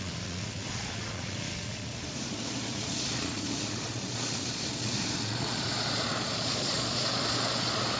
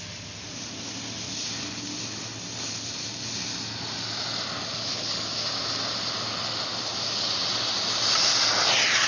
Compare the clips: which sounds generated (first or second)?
first